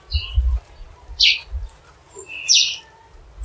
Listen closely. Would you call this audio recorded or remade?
recorded